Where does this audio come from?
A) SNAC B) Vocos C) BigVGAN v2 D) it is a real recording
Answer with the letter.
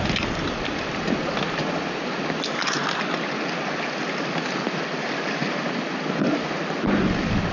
D